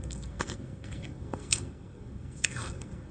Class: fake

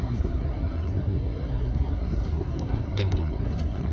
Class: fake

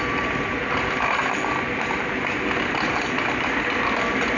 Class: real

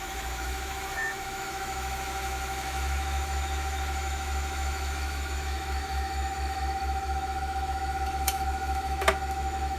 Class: fake